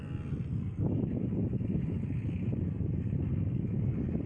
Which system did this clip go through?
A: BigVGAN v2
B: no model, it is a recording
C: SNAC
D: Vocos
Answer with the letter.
B